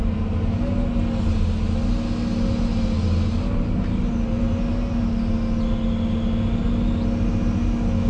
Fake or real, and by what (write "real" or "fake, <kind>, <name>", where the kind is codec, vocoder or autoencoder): real